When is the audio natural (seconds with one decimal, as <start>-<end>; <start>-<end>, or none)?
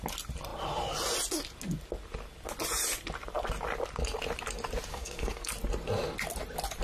0.0-4.9; 5.5-6.8